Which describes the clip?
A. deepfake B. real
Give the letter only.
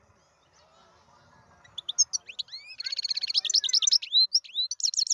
B